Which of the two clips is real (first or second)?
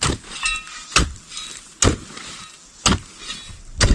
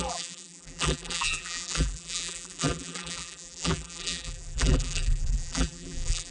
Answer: first